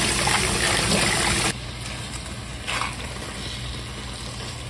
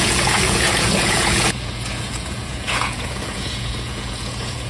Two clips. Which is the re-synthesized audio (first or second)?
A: second